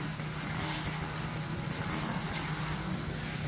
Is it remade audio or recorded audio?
recorded